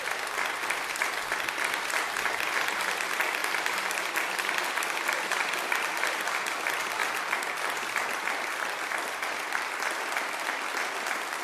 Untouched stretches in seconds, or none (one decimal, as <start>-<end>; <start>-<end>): 0.0-3.4; 4.5-11.4